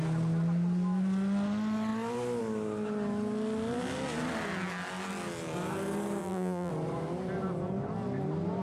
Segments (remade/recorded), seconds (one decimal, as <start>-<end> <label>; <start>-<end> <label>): 0.0-6.2 recorded; 6.2-6.7 remade; 6.7-8.6 recorded